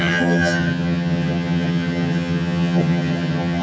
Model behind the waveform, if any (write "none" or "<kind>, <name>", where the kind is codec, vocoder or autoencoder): vocoder, HiFi-GAN